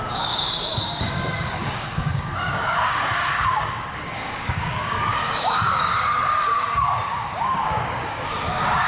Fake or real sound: fake